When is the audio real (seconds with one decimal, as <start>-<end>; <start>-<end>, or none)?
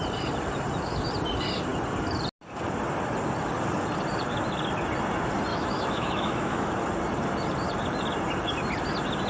0.0-5.5; 6.7-9.3